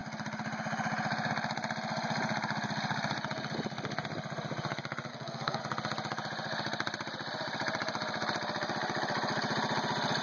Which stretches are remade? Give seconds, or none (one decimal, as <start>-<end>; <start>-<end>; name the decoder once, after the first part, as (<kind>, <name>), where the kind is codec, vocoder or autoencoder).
5.1-5.6 (codec, SNAC)